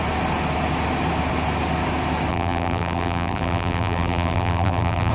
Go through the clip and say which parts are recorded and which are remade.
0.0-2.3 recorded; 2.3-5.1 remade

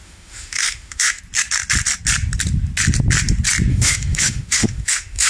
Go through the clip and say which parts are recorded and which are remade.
0.0-1.2 remade; 1.2-3.7 recorded; 3.7-5.3 remade

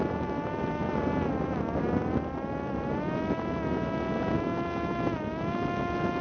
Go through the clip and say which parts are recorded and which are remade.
0.0-6.2 recorded

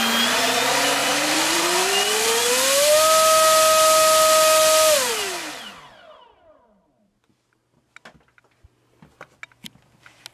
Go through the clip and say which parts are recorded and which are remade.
0.0-1.0 recorded; 1.0-2.4 remade; 2.4-10.3 recorded

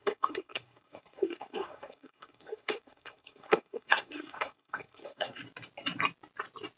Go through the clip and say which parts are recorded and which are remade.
0.0-5.4 remade; 5.4-6.8 recorded

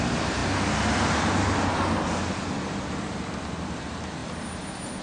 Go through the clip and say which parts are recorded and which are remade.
0.0-5.0 recorded

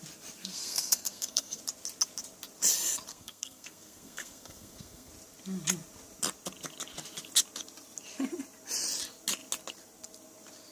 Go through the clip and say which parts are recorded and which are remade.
0.0-0.4 recorded; 0.4-1.6 remade; 1.6-3.1 recorded; 3.1-5.1 remade; 5.1-10.7 recorded

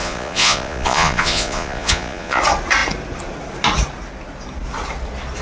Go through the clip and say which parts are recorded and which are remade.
0.0-2.4 remade; 2.4-5.4 recorded